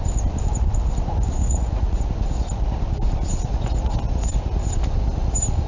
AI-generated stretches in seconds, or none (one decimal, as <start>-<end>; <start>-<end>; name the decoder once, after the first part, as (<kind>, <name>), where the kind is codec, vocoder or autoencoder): 1.4-2.0 (vocoder, Vocos)